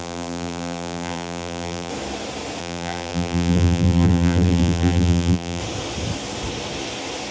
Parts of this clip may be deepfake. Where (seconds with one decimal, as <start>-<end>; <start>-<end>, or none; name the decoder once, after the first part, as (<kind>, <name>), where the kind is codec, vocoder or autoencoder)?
0.0-1.9 (vocoder, BigVGAN v2); 2.6-5.6